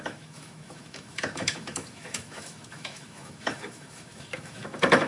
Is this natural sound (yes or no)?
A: no